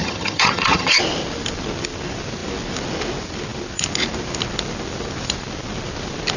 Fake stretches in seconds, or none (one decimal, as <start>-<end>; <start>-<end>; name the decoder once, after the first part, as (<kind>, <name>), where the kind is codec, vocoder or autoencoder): 0.0-1.0 (vocoder, HiFi-GAN)